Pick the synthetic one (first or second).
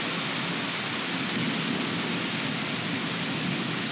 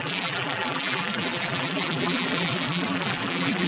second